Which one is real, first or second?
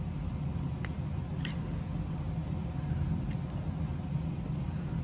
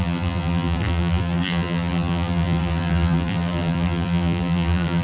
first